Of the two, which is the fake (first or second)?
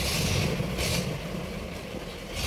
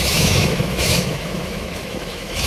second